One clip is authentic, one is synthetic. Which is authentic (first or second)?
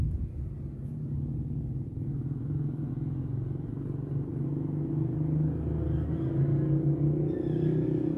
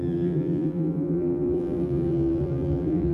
first